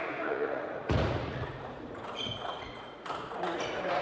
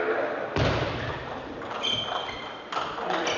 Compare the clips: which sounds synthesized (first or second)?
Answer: first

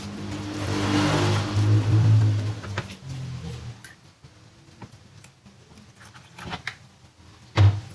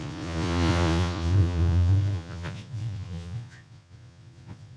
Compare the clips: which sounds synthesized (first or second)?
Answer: second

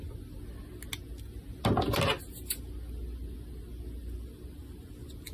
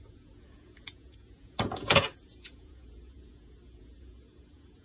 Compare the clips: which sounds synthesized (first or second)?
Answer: second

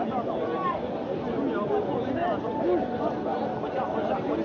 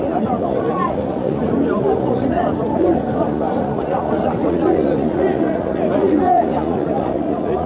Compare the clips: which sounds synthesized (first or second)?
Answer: second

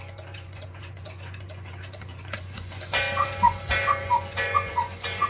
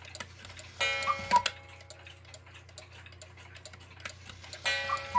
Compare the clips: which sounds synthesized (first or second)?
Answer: first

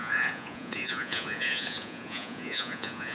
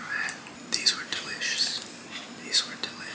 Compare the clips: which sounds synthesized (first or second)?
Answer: first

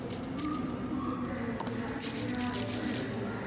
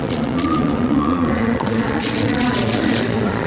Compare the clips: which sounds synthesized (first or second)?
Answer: second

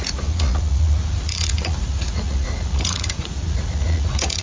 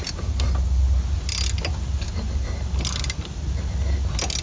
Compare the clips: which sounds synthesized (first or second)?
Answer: first